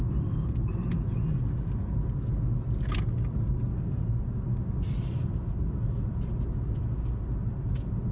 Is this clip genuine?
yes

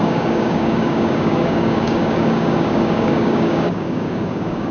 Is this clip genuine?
no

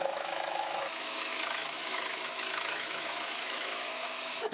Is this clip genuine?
no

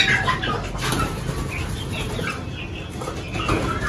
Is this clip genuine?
yes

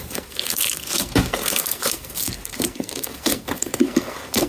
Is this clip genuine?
no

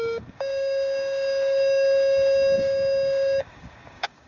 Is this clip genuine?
no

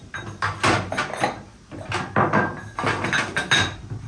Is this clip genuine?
yes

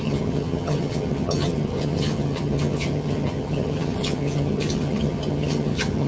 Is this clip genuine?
no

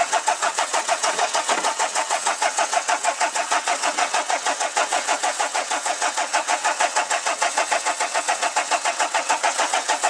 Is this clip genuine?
no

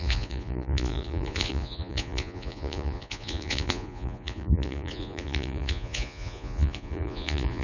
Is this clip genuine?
no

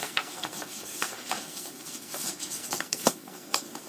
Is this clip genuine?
no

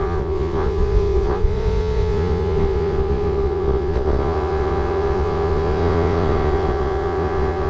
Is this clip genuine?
no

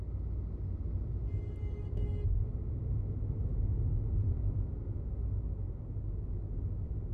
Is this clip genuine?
yes